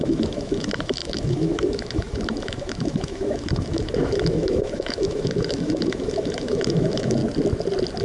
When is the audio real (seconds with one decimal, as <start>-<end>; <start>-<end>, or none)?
7.2-8.0